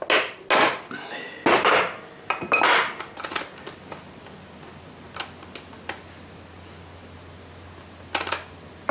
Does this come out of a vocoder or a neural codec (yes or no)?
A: no